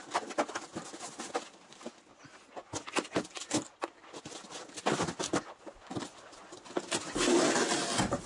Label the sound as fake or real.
real